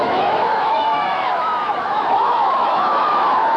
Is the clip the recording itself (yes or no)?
no